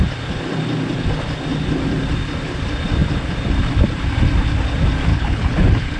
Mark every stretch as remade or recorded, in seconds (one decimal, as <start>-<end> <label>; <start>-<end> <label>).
0.0-5.1 recorded; 5.1-6.0 remade